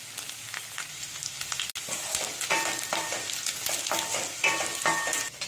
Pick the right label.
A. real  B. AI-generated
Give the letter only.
A